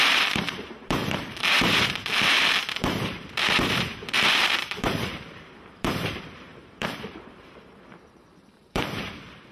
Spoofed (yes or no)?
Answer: yes